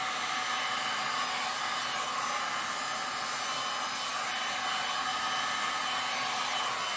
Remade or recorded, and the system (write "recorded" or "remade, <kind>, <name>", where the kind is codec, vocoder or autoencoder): recorded